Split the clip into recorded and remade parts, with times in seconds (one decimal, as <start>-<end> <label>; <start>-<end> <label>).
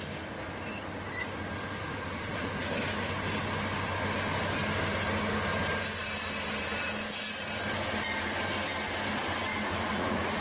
0.0-1.8 recorded; 1.8-2.7 remade; 2.7-9.5 recorded; 9.5-10.4 remade